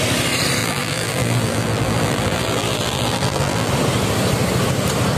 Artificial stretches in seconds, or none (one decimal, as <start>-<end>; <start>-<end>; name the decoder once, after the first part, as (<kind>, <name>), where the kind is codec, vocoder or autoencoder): 0.6-3.7 (vocoder, BigVGAN v2)